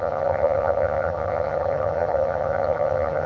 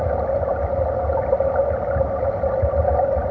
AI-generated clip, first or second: first